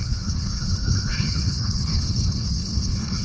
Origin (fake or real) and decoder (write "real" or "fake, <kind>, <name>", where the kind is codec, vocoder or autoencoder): fake, codec, HILCodec